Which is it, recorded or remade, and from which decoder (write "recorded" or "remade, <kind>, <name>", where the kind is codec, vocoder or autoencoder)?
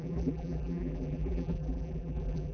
remade, vocoder, BigVGAN v2